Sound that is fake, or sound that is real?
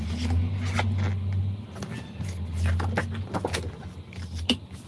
real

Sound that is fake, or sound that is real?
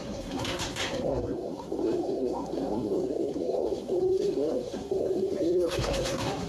fake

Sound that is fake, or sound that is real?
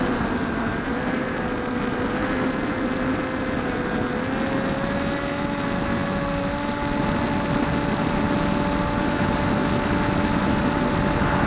real